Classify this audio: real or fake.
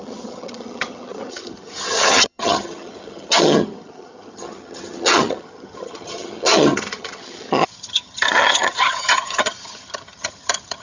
fake